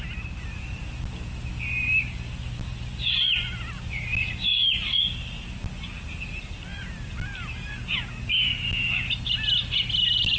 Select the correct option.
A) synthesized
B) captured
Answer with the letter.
B